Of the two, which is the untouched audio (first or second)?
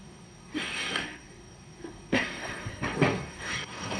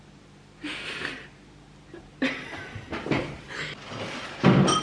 second